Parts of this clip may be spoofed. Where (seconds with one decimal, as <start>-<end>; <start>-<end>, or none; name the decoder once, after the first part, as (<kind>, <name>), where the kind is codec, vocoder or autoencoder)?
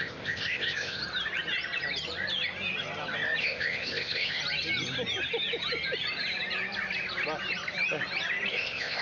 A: 0.0-1.0 (codec, ZipCodec); 3.4-4.4; 8.5-9.0